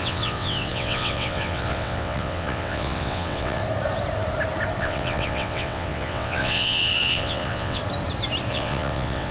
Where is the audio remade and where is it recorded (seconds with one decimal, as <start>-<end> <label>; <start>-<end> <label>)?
0.0-3.6 remade; 3.6-4.8 recorded; 4.8-7.8 remade; 7.8-8.5 recorded; 8.5-9.3 remade